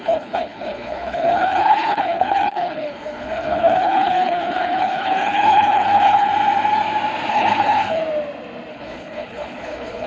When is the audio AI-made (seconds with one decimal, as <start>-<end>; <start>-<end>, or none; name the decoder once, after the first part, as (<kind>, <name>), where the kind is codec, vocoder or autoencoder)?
0.0-6.3 (codec, HILCodec); 7.3-8.0; 8.7-10.1